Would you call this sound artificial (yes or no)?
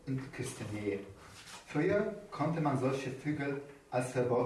no